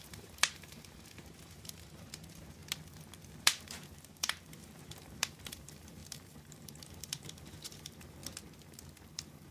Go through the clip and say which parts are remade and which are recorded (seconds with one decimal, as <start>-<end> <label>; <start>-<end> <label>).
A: 0.0-2.6 remade; 2.6-3.4 recorded; 3.4-8.2 remade; 8.2-9.1 recorded; 9.1-9.5 remade

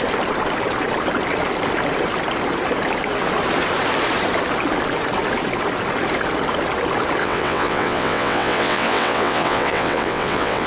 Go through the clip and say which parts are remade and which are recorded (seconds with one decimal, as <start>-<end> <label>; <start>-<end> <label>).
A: 0.0-7.2 recorded; 7.2-10.7 remade

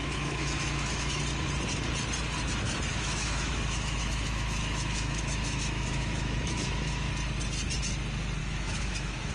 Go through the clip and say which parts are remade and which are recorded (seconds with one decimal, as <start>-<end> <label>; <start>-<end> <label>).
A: 0.0-1.2 remade; 1.2-2.9 recorded; 2.9-7.1 remade; 7.1-8.4 recorded; 8.4-9.3 remade